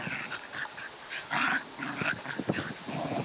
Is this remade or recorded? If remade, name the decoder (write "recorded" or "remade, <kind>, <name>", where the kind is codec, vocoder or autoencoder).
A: recorded